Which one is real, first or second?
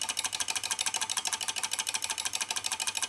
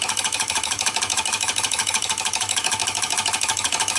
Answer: first